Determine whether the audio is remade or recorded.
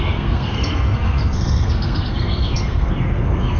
remade